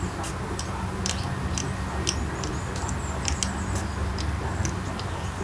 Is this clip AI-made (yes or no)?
no